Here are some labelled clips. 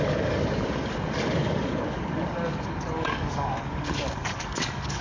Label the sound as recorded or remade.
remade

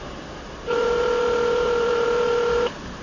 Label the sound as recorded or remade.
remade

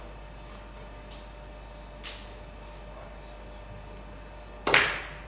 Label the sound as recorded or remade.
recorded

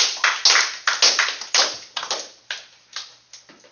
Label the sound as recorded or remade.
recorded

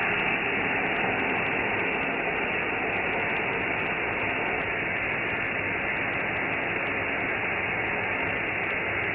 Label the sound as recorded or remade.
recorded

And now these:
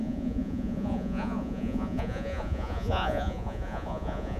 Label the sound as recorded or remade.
remade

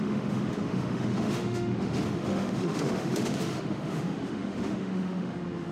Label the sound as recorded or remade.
remade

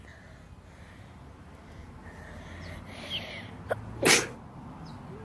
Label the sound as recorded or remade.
recorded